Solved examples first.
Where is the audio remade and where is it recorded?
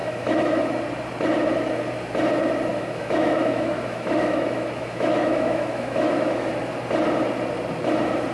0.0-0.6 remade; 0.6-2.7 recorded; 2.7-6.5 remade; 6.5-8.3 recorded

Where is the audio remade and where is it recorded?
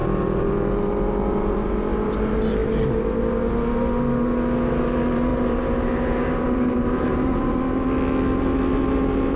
0.0-5.3 recorded; 5.3-7.5 remade; 7.5-9.4 recorded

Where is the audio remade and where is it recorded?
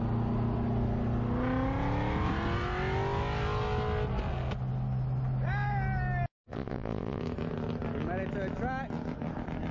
0.0-6.5 recorded; 6.5-7.2 remade; 7.2-9.7 recorded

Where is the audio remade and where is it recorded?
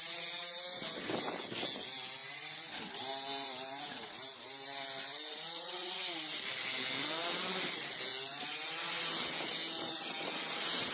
0.0-10.9 recorded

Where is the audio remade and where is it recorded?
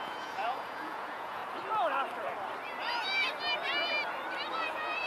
0.0-1.4 remade; 1.4-4.5 recorded; 4.5-5.1 remade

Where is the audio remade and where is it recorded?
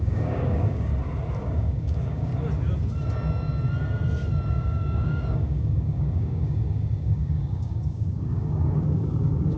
0.0-0.9 remade; 0.9-1.4 recorded; 1.4-2.3 remade; 2.3-4.5 recorded; 4.5-9.6 remade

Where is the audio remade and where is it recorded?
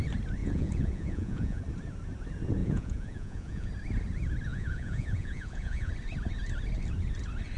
0.0-0.4 recorded; 0.4-1.6 remade; 1.6-2.6 recorded; 2.6-3.7 remade; 3.7-4.5 recorded; 4.5-5.9 remade; 5.9-7.6 recorded